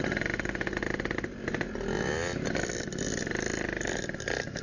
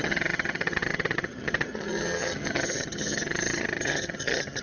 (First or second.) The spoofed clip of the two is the second